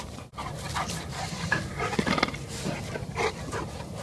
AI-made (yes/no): no